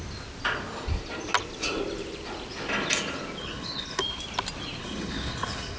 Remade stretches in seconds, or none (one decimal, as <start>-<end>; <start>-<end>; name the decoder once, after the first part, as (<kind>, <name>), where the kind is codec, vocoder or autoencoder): 3.4-4.0 (codec, HILCodec); 4.8-5.8